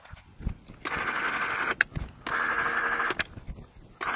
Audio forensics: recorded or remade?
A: recorded